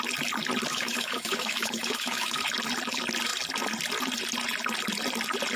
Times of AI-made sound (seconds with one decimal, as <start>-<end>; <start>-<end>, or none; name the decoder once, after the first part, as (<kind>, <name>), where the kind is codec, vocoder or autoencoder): 0.7-2.4 (autoencoder, DAC-VAE)